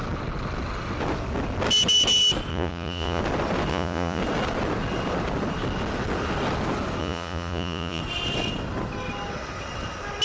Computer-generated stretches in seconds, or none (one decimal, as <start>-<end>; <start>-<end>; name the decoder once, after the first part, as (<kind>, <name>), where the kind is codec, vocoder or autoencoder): 2.5-3.2 (vocoder, Vocos); 3.7-4.2; 7.0-8.0